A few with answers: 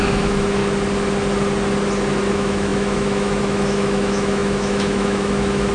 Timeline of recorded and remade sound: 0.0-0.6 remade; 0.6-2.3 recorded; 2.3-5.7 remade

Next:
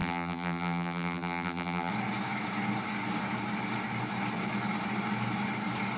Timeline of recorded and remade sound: 0.0-1.9 remade; 1.9-6.0 recorded

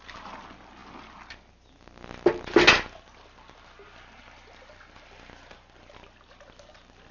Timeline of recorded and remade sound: 0.0-7.1 recorded